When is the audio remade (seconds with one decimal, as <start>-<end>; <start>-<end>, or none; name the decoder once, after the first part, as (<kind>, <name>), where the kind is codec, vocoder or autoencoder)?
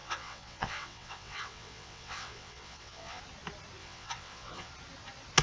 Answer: 0.0-3.2 (vocoder, WaveNeXt); 3.8-4.7